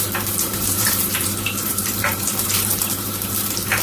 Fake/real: fake